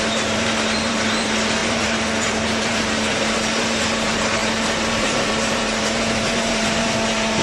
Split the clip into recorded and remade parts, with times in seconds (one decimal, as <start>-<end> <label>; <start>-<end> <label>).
0.0-7.4 remade